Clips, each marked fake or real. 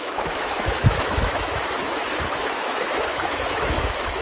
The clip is fake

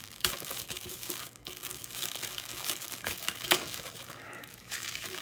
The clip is fake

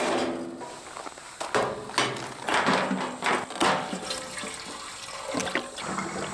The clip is real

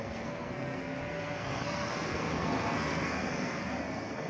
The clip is fake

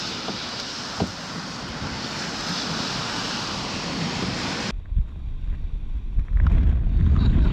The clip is real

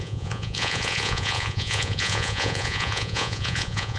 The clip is fake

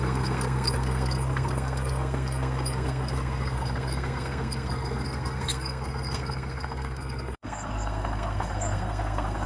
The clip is fake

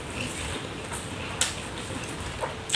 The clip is real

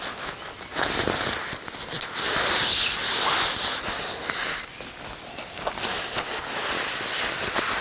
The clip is real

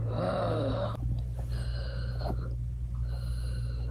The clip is real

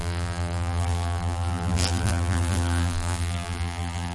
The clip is fake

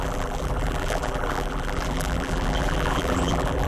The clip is fake